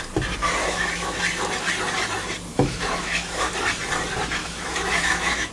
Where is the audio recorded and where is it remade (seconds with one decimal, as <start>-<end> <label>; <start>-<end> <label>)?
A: 0.0-0.6 recorded; 0.6-1.2 remade; 1.2-2.5 recorded; 2.5-3.5 remade; 3.5-4.4 recorded; 4.4-5.5 remade